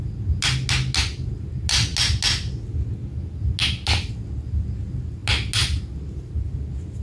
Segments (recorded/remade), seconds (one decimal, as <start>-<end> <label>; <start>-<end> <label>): 0.0-7.0 recorded